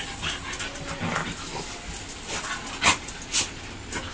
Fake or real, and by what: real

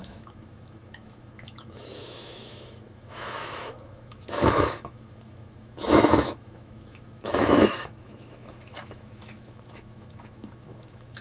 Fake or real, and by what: fake, autoencoder, DAC-VAE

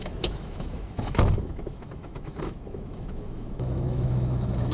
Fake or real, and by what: fake, autoencoder, DAC-VAE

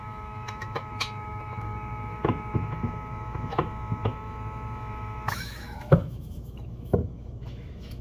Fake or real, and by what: fake, autoencoder, DAC-VAE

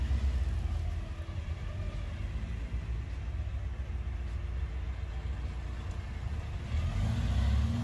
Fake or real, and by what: real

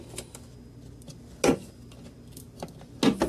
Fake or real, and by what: real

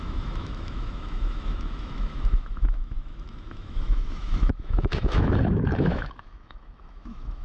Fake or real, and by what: fake, autoencoder, DAC-VAE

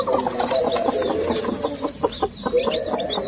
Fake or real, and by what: real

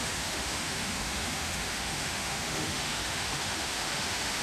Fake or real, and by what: fake, autoencoder, DAC-VAE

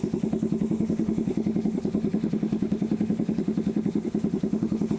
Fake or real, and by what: fake, autoencoder, DAC-VAE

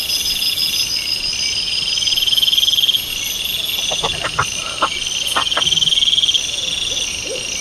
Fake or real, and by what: real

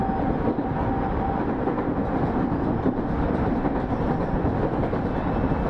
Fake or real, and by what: real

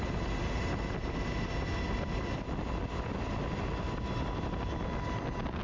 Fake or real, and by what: real